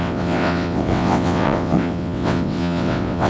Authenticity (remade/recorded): remade